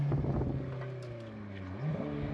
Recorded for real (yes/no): yes